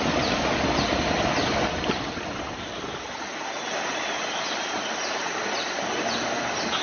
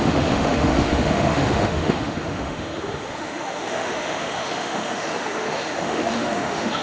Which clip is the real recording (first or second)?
first